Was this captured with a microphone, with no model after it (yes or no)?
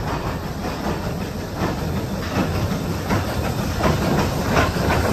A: no